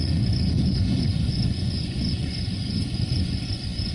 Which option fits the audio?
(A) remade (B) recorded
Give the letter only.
A